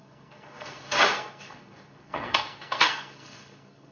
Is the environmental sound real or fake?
fake